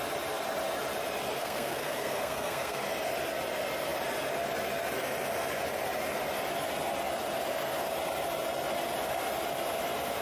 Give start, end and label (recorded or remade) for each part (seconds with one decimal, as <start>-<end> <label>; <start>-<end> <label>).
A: 0.0-1.4 recorded; 1.4-2.8 remade; 2.8-10.2 recorded